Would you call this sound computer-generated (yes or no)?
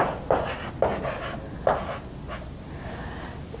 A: no